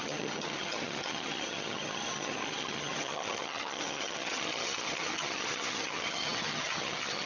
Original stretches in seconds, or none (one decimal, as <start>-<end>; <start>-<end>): none